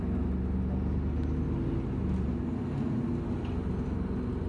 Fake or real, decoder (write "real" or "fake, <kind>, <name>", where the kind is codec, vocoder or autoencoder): real